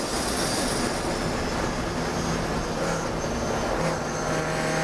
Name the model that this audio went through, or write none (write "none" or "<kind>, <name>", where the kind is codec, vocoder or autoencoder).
none